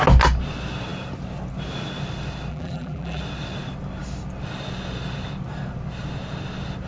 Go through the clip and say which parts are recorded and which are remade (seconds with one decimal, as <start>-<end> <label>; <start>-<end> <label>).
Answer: 0.0-2.5 recorded; 2.5-3.2 remade; 3.2-6.9 recorded